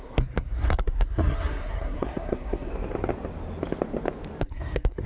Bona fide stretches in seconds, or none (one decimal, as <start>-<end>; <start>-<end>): 2.7-4.4